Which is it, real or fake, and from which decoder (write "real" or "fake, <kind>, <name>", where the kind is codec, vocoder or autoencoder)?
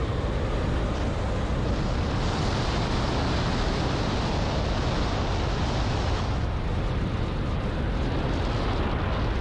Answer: real